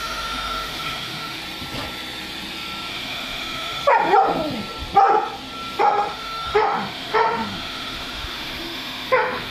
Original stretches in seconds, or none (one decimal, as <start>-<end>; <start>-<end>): 1.4-2.9; 3.8-5.8